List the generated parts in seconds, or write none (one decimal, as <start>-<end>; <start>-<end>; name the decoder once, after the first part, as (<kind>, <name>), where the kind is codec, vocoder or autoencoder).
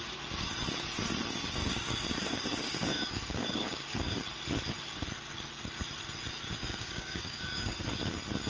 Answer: 1.6-4.1 (codec, DAC); 6.6-7.8